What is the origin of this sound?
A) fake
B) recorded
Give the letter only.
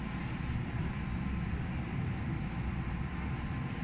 B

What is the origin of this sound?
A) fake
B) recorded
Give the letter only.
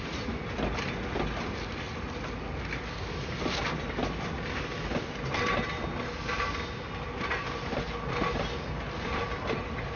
B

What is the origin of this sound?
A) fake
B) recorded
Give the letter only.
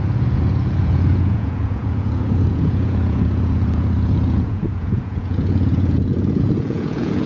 A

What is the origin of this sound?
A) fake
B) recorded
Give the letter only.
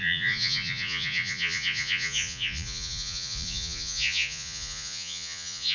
A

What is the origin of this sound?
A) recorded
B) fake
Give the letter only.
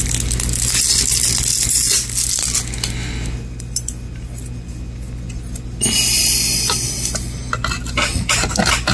A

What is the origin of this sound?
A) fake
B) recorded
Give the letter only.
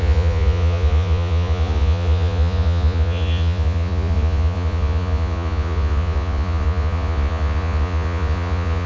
A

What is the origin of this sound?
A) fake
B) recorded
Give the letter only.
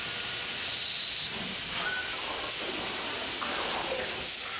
B